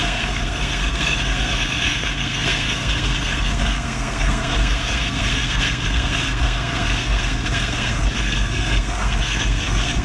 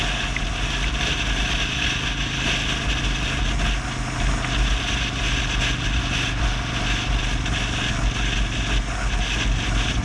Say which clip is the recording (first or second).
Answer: second